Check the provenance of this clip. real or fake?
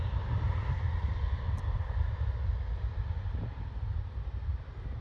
real